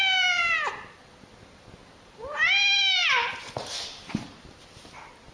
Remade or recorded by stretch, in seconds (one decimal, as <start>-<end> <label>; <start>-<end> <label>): 0.0-5.3 recorded